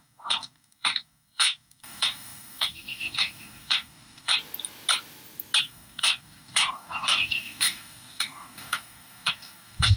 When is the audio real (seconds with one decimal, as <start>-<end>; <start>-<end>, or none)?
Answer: 4.3-5.6